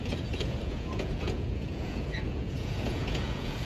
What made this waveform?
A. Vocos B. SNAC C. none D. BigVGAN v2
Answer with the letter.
A